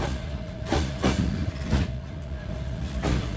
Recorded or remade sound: remade